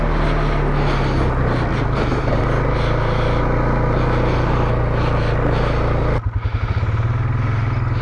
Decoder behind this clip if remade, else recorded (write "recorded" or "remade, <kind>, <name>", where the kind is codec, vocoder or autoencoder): recorded